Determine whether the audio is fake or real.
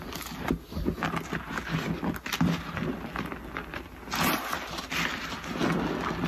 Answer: real